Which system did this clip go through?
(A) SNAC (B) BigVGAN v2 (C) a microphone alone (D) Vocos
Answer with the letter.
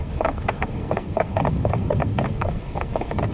A